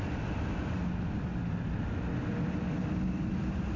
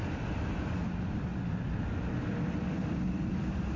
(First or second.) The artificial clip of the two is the second